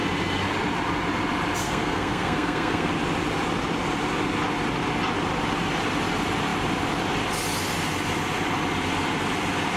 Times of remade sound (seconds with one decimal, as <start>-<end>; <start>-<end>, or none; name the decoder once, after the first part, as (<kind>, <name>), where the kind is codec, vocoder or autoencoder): 1.6-2.9 (codec, SNAC)